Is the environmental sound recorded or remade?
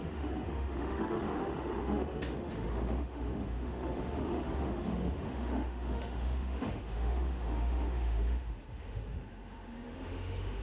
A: remade